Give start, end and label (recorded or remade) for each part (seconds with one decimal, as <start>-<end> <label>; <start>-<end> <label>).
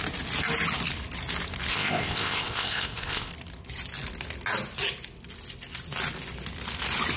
0.0-1.7 recorded; 1.7-3.3 remade; 3.3-7.2 recorded